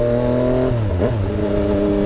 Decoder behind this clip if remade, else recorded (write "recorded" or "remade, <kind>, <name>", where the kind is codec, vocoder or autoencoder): recorded